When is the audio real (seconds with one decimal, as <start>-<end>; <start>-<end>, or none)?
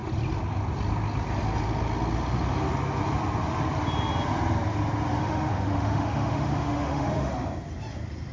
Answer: 0.0-5.2; 7.3-8.3